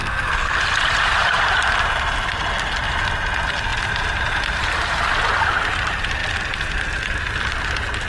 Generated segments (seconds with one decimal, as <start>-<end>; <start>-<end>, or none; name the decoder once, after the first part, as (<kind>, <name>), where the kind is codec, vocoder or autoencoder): 0.0-0.6 (codec, SNAC)